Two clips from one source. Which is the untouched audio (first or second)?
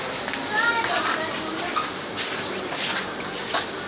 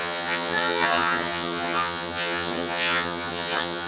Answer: first